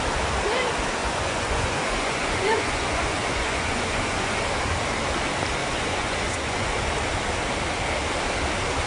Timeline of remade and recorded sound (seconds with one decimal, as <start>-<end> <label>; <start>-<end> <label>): 0.0-1.0 recorded; 1.0-4.4 remade; 4.4-5.6 recorded; 5.6-6.9 remade; 6.9-8.9 recorded